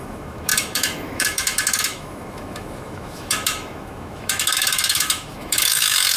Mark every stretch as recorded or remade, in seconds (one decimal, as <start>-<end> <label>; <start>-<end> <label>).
0.0-6.2 remade